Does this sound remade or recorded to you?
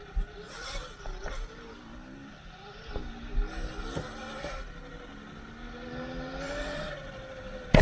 recorded